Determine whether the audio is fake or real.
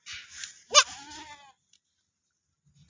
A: real